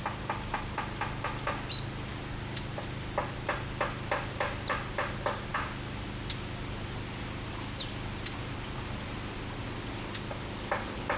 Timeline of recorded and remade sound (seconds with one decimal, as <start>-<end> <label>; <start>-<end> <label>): 0.0-11.2 recorded